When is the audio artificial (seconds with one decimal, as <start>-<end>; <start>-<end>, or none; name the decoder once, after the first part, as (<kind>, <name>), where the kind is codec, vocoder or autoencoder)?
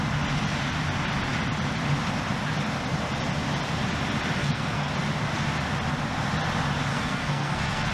4.4-4.9 (codec, SNAC); 6.9-7.9